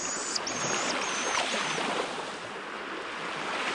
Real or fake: real